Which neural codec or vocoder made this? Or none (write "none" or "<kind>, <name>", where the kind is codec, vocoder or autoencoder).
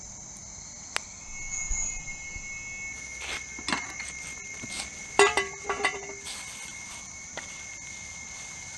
none